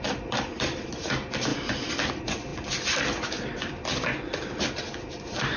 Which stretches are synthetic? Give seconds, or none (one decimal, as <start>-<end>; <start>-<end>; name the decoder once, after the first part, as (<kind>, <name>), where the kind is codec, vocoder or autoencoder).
none